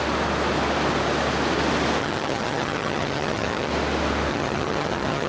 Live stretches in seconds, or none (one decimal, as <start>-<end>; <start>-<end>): 0.0-2.0; 3.7-4.3